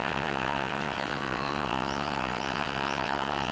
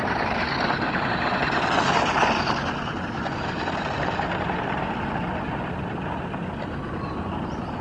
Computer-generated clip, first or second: first